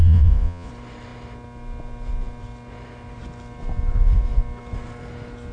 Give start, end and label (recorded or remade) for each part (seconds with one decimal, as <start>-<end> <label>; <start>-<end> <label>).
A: 0.0-0.7 remade; 0.7-5.5 recorded